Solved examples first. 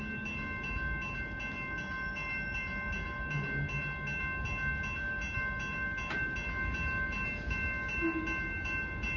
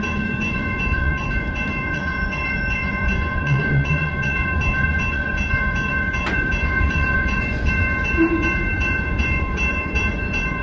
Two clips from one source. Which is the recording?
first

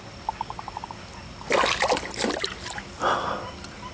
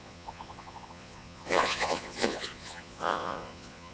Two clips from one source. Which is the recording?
first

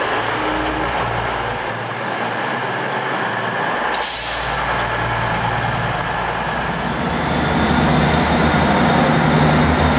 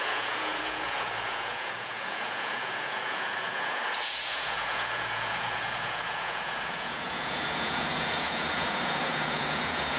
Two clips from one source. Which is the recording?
first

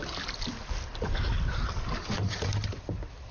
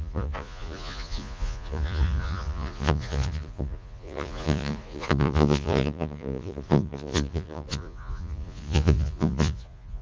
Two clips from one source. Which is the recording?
first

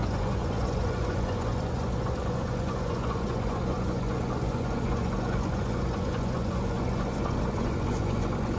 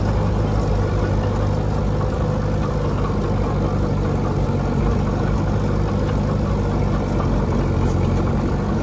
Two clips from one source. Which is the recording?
second